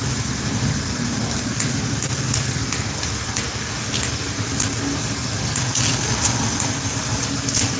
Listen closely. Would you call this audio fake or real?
real